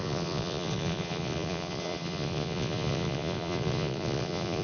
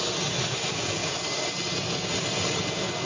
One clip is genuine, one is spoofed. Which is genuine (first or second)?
second